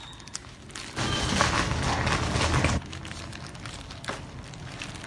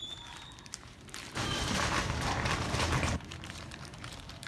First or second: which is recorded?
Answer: first